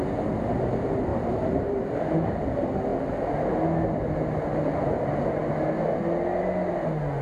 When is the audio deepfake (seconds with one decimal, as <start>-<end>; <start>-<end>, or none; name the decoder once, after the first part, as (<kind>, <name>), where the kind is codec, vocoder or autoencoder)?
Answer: 1.1-2.3 (vocoder, BigVGAN v2)